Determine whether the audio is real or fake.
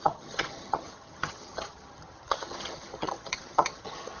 fake